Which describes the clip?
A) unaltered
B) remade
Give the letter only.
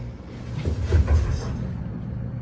A